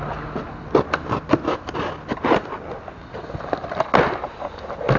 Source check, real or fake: real